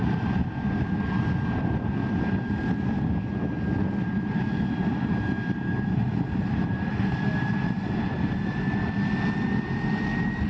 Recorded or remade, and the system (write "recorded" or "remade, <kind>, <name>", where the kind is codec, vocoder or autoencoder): recorded